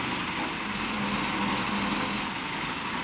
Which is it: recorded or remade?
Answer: recorded